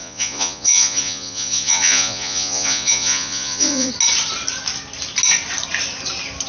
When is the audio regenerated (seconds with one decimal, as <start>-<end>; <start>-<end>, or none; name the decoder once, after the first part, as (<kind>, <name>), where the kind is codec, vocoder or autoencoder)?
0.0-3.9 (vocoder, Vocos)